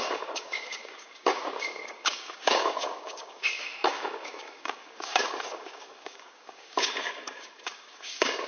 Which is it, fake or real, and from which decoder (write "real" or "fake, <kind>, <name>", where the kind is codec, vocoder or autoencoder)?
fake, codec, DAC